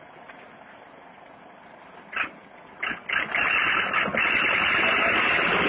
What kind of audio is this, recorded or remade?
recorded